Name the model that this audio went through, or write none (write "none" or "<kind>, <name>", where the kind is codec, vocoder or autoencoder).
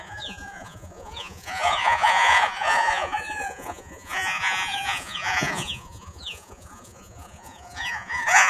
vocoder, Vocos